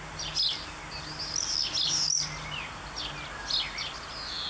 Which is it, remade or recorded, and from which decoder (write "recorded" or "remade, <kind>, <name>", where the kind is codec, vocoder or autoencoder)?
recorded